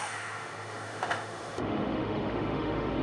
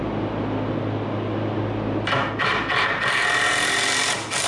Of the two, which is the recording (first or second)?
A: second